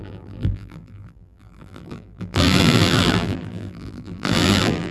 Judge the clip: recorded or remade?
remade